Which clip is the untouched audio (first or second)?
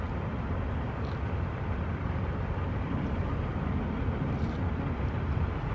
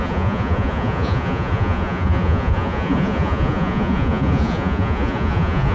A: first